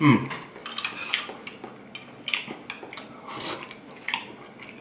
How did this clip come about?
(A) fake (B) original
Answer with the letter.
B